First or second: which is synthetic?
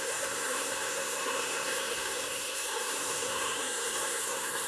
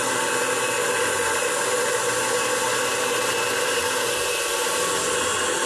first